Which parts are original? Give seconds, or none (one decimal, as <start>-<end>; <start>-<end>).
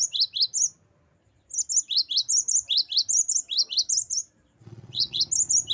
0.0-4.6; 5.2-5.7